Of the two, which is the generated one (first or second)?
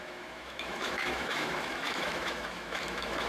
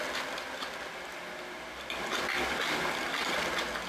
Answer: first